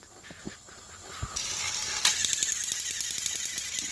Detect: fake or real real